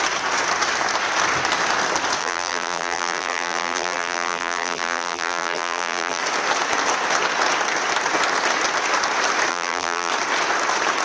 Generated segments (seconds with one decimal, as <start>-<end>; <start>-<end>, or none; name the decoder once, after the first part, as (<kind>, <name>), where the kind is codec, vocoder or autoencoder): 2.2-6.2 (vocoder, BigVGAN v2); 9.5-10.1